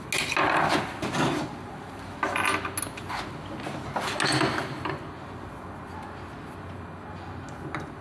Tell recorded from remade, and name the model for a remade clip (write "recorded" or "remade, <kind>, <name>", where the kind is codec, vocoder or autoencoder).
recorded